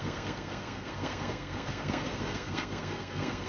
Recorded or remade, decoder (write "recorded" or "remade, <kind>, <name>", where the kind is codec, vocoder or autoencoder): remade, codec, SNAC